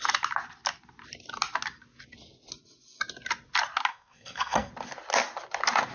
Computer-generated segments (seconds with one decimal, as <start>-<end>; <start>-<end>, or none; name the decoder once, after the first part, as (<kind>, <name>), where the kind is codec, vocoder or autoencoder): 3.9-4.7 (codec, SNAC)

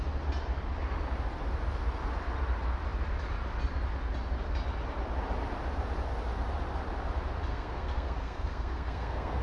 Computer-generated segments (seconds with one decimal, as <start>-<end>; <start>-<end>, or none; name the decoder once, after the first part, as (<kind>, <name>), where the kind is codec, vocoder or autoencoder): 7.5-9.4 (codec, SNAC)

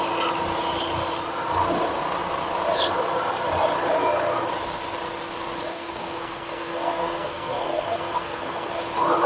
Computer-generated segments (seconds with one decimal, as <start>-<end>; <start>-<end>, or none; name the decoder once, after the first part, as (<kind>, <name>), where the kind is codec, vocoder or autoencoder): 5.7-8.7 (codec, SNAC)

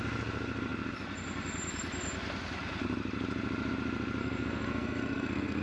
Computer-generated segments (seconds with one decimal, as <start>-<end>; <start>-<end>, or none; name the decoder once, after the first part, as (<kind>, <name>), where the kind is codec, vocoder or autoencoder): 4.2-5.6 (codec, SNAC)

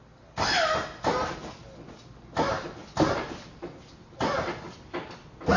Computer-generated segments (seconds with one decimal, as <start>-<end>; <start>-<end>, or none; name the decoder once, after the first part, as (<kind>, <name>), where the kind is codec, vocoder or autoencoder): none

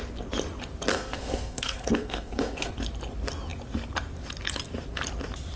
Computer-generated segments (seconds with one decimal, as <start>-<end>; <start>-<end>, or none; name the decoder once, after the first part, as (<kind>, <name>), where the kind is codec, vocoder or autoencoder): 0.9-2.7 (codec, SNAC)

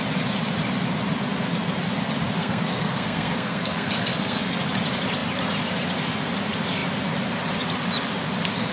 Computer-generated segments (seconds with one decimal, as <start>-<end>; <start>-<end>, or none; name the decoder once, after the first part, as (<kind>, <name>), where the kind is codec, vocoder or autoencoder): 2.4-4.5 (codec, SNAC)

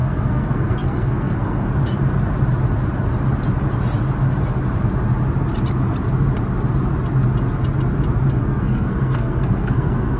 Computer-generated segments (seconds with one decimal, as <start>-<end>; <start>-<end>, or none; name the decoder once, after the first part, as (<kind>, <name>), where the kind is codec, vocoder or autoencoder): 0.0-1.7 (codec, SNAC); 8.4-10.2